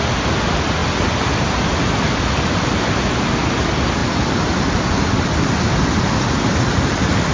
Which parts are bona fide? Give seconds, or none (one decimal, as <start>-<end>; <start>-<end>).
0.0-0.8; 2.2-4.0; 4.9-7.3